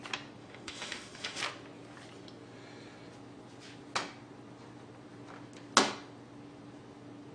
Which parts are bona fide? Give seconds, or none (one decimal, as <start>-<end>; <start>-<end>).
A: 0.0-0.4; 1.4-7.3